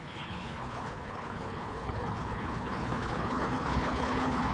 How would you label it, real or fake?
fake